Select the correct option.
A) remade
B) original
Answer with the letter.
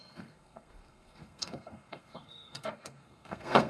A